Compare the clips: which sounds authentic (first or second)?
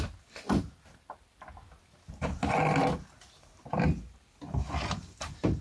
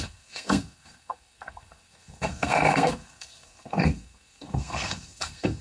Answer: first